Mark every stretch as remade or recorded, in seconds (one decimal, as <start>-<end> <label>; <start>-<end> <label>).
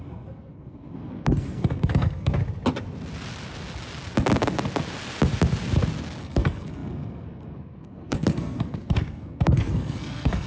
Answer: 0.0-2.4 remade; 2.4-6.2 recorded; 6.2-10.5 remade